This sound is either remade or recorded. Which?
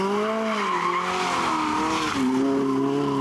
recorded